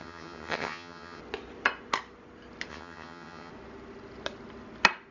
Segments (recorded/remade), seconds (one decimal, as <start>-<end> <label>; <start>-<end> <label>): 0.0-1.2 remade; 1.2-2.7 recorded; 2.7-3.5 remade; 3.5-5.1 recorded